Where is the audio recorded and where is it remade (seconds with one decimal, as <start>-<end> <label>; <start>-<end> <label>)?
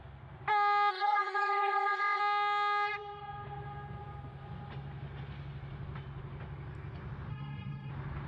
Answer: 0.0-0.9 recorded; 0.9-2.2 remade; 2.2-7.3 recorded; 7.3-7.9 remade; 7.9-8.3 recorded